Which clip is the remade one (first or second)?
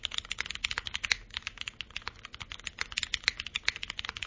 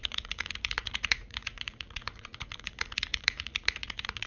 second